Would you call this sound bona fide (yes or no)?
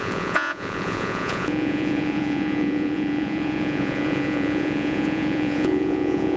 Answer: no